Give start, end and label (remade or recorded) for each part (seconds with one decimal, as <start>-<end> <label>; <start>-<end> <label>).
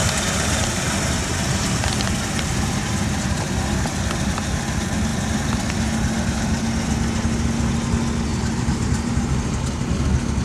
0.0-2.2 remade; 2.2-8.3 recorded; 8.3-9.2 remade; 9.2-10.4 recorded